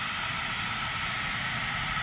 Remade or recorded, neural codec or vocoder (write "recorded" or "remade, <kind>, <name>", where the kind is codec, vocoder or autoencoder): recorded